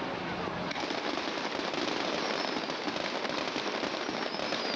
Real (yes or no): yes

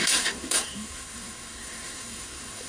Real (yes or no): no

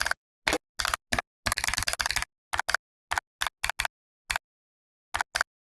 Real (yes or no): yes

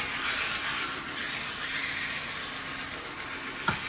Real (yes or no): yes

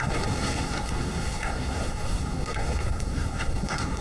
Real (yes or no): no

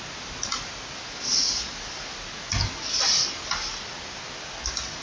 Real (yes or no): yes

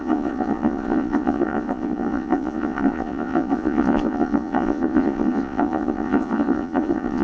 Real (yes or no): no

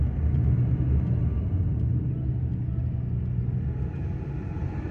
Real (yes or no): yes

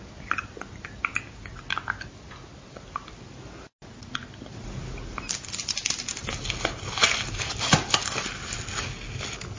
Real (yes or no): yes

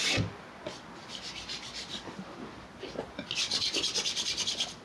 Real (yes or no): yes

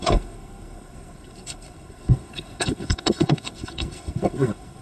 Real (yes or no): no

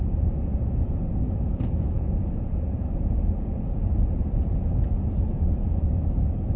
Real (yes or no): no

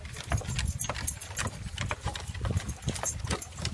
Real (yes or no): yes